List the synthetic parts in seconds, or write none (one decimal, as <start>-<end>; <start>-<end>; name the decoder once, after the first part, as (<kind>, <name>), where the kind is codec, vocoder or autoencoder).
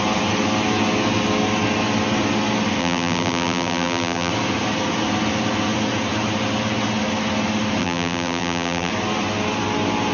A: 2.8-4.3 (vocoder, BigVGAN v2); 7.8-8.9